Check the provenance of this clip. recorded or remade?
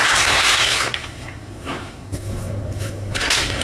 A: remade